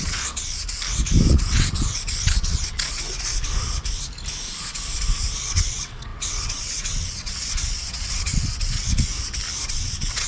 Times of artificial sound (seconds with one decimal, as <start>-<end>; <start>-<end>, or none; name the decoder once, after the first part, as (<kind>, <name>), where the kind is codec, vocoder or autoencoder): 0.0-0.6 (vocoder, WaveNeXt); 1.3-3.3; 5.4-9.1; 9.7-10.3